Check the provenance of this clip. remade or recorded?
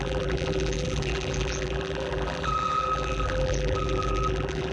remade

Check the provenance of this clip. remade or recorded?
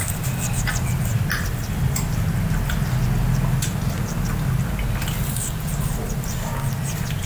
recorded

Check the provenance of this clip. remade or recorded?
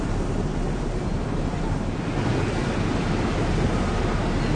recorded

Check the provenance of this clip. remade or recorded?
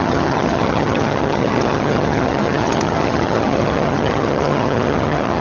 remade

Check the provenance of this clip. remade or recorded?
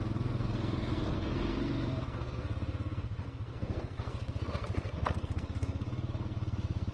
remade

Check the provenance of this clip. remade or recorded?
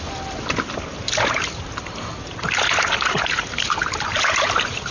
recorded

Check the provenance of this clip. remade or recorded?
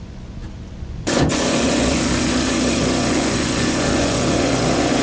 remade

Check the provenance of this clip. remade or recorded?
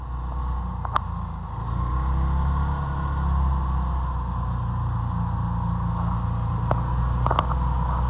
recorded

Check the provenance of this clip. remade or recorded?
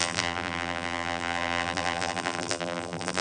remade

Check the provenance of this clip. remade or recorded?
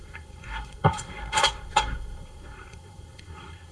remade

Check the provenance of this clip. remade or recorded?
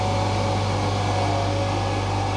recorded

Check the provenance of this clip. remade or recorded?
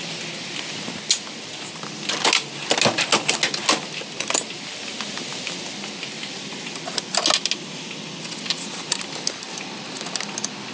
recorded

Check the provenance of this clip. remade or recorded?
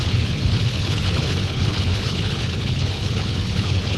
remade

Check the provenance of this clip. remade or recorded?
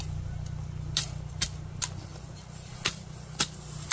recorded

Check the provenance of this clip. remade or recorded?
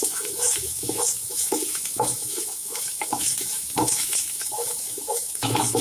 remade